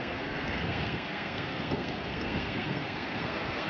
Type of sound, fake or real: fake